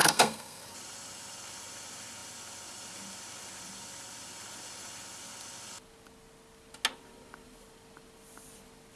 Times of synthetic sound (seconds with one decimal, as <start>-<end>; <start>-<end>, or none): 0.0-0.7